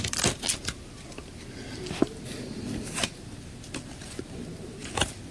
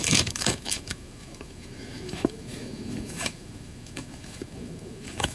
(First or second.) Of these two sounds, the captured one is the first